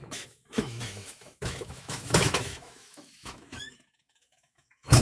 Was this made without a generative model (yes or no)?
no